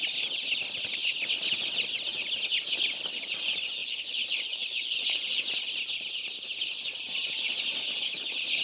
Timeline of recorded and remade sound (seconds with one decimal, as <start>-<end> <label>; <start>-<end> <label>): 0.0-3.8 recorded; 3.8-5.4 remade; 5.4-8.6 recorded